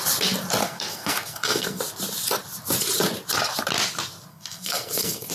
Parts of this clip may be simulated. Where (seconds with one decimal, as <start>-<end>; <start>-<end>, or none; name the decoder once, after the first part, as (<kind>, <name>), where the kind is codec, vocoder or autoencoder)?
0.6-1.8 (codec, SNAC); 4.3-5.3